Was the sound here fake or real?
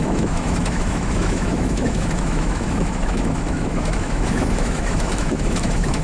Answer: fake